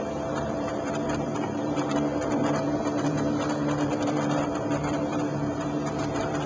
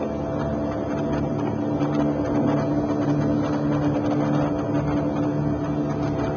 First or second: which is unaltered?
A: second